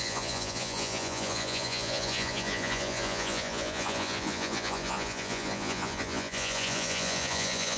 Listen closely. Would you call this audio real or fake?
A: fake